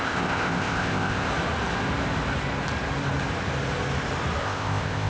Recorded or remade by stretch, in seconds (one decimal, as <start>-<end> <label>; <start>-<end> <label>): 0.0-1.3 remade; 1.3-4.4 recorded; 4.4-5.1 remade